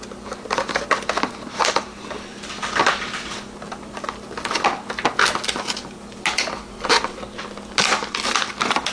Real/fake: real